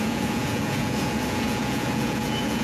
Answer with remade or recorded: remade